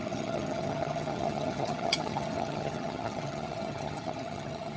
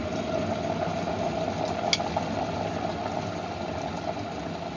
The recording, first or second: second